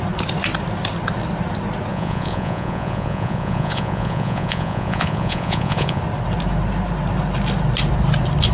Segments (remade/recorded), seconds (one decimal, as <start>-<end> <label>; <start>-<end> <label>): 0.0-1.9 recorded; 1.9-6.0 remade; 6.0-8.5 recorded